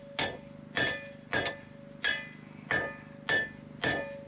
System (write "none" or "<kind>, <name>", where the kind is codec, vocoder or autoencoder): none